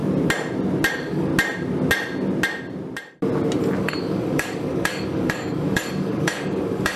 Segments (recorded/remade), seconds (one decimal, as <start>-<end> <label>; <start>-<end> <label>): 0.0-0.9 recorded; 0.9-1.3 remade; 1.3-3.8 recorded; 3.8-7.0 remade